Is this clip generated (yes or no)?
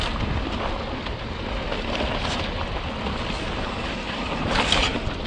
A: no